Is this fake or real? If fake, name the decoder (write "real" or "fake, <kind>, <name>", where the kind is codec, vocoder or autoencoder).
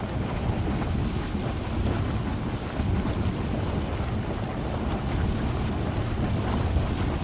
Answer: real